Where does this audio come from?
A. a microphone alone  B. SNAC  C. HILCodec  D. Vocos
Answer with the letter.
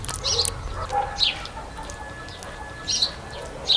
A